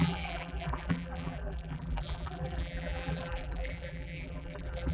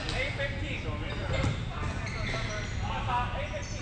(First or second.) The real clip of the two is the second